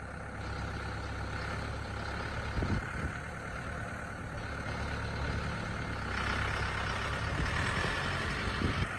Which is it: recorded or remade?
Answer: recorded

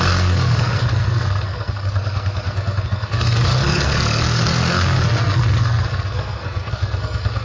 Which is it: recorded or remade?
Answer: remade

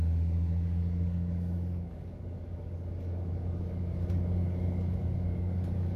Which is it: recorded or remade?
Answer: remade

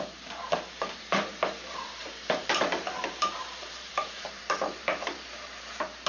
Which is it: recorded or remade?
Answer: remade